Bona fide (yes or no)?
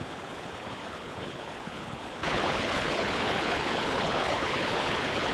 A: no